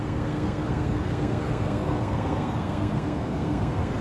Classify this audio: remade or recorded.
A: remade